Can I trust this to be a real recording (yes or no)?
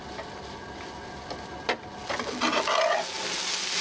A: yes